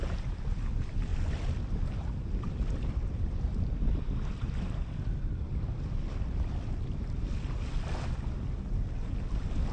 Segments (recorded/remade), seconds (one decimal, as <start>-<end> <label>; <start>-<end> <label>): 0.0-9.7 recorded